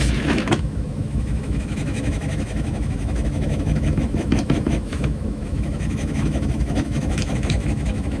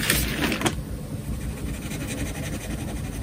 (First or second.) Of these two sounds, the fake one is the first